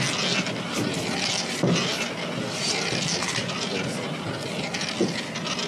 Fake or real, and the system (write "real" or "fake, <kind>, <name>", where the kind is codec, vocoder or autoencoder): real